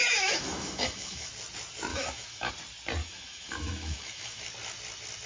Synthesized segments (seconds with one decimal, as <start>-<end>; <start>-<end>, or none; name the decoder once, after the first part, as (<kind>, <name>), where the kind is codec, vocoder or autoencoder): 0.0-1.3 (autoencoder, DAC-VAE); 1.9-2.5; 3.0-4.4